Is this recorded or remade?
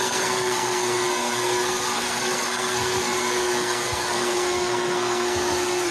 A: remade